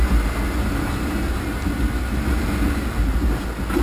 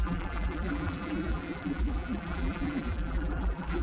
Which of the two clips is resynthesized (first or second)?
second